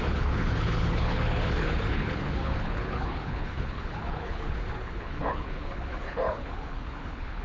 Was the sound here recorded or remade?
remade